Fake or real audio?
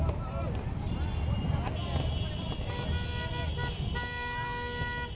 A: real